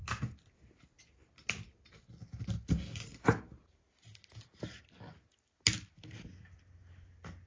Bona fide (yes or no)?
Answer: yes